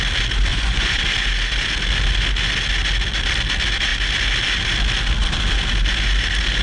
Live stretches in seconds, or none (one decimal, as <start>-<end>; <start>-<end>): 0.0-0.5; 1.0-6.6